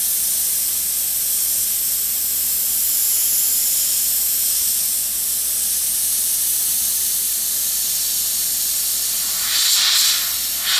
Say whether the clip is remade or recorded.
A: recorded